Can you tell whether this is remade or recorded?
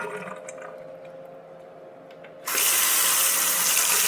recorded